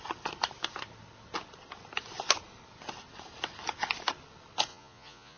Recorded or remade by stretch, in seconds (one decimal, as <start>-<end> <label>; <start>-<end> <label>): 0.0-4.7 recorded; 4.7-5.4 remade